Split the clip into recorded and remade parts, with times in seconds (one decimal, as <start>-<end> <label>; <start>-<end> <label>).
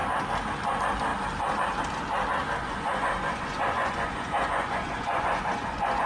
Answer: 0.0-2.6 recorded; 2.6-6.1 remade